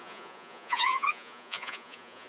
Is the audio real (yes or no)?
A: no